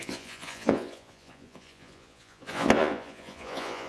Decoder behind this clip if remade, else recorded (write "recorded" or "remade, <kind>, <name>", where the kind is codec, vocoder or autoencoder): remade, vocoder, Vocos